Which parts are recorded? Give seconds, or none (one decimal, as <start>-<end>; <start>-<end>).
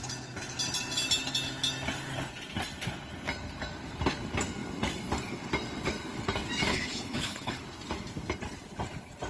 0.0-6.7; 7.6-9.3